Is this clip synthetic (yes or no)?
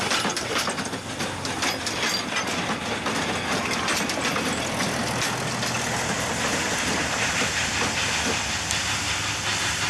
no